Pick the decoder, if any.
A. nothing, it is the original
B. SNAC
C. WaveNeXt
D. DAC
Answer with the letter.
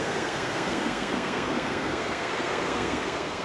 B